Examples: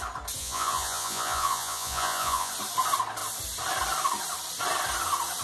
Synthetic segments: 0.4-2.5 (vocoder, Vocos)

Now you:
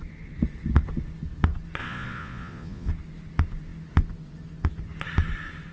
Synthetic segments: 1.8-2.9 (vocoder, Vocos)

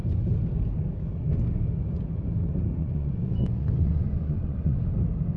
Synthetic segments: 2.8-4.8 (vocoder, Vocos)

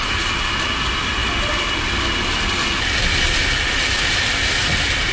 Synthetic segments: none

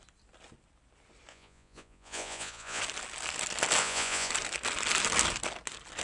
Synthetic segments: 1.3-2.8 (vocoder, Vocos); 3.8-4.3